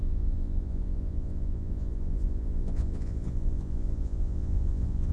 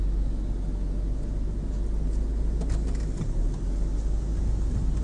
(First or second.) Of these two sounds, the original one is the second